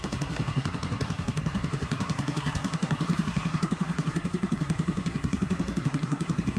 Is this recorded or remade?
remade